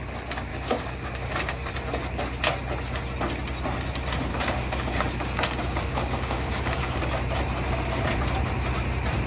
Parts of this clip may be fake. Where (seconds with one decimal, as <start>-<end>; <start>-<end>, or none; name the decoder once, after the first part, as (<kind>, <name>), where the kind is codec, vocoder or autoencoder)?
0.5-1.7 (codec, DAC); 4.3-7.1